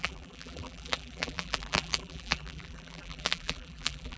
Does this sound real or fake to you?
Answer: fake